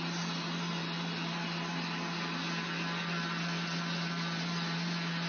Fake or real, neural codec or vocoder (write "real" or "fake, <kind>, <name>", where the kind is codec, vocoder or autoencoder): real